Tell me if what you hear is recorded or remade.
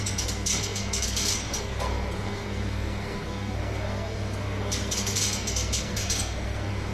remade